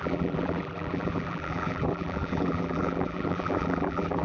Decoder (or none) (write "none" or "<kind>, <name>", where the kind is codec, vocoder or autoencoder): vocoder, BigVGAN v2